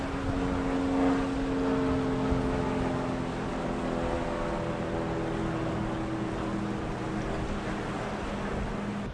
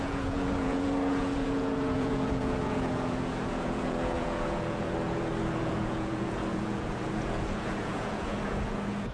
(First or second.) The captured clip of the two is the first